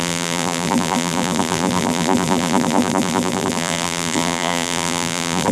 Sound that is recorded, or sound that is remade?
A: remade